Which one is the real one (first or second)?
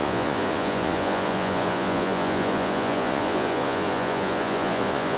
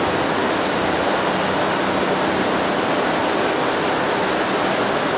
second